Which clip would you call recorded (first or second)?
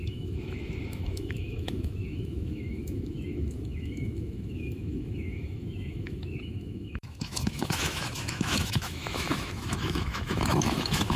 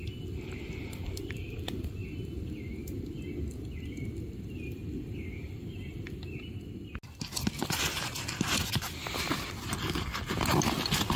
second